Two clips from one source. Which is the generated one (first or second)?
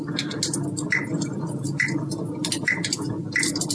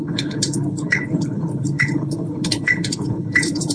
second